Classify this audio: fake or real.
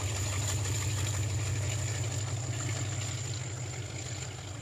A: real